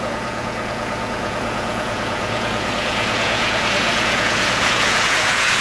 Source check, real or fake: fake